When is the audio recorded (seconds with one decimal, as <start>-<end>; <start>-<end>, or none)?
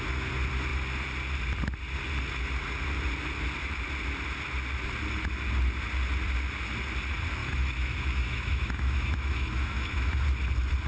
0.0-7.4; 10.2-10.9